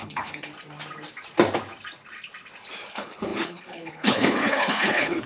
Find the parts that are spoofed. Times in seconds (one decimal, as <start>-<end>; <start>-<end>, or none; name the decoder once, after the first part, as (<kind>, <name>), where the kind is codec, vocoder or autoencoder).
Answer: 0.0-0.5 (codec, HILCodec); 2.9-5.3